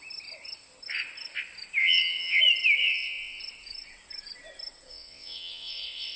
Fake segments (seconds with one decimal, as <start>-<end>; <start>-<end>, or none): 1.8-2.4; 2.8-3.4; 4.9-6.2